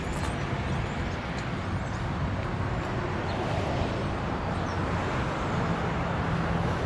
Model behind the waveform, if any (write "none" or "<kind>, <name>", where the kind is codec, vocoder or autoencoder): none